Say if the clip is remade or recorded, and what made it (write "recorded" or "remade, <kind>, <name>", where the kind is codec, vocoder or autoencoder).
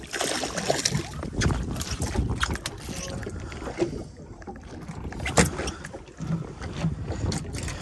recorded